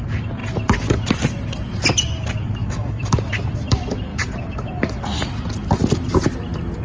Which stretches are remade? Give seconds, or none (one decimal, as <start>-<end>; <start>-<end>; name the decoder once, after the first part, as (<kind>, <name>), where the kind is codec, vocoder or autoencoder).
2.6-3.1 (autoencoder, DAC-VAE)